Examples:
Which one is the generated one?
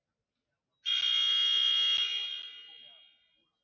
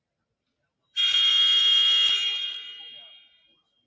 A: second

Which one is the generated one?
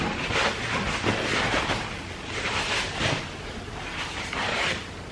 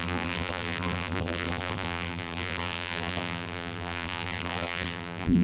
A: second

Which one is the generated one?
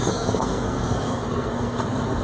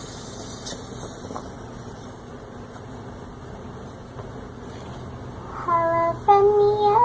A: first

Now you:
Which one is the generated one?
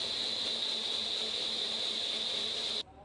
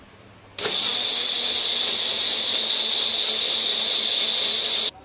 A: first